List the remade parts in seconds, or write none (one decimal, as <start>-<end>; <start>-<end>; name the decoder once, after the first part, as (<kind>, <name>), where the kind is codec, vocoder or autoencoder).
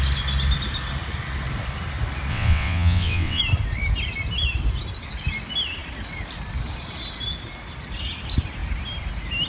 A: 2.3-3.4 (vocoder, WaveNeXt)